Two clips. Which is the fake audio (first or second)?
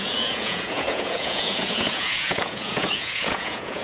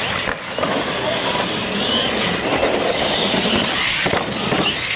first